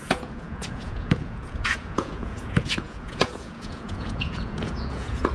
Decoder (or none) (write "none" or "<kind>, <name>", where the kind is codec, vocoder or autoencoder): vocoder, Vocos